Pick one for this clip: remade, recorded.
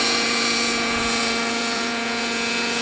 remade